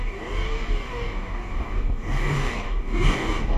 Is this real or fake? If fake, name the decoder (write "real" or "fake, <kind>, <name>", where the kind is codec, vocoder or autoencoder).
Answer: fake, codec, DAC